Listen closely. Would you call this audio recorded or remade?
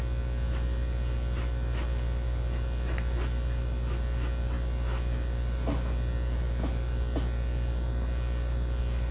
recorded